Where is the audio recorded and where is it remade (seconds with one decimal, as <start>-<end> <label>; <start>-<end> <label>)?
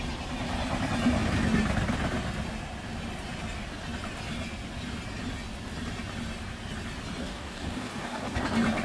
0.0-7.2 recorded; 7.2-8.4 remade; 8.4-8.8 recorded